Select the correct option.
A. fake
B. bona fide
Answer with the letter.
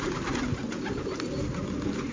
B